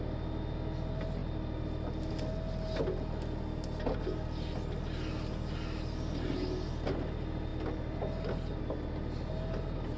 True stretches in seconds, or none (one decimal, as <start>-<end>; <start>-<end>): 0.0-10.0